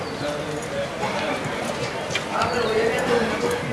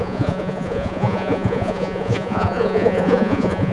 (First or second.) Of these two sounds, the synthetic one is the second